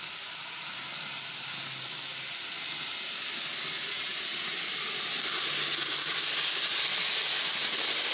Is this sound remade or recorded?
recorded